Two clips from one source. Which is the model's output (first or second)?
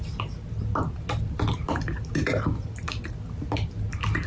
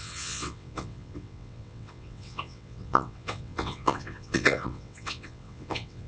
second